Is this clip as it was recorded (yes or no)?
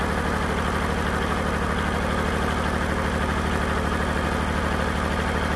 yes